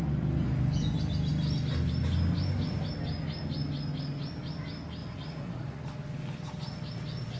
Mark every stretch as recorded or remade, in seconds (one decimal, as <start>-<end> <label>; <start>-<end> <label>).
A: 0.0-5.0 recorded; 5.0-5.8 remade; 5.8-7.4 recorded